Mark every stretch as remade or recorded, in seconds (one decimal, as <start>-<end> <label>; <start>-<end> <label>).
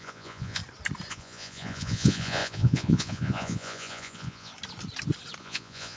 0.0-0.6 remade; 0.6-1.1 recorded; 1.1-4.5 remade; 4.5-5.4 recorded; 5.4-6.0 remade